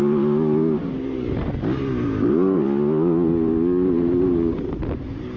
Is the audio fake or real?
real